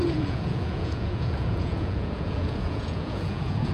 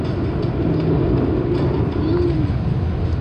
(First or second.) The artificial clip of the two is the first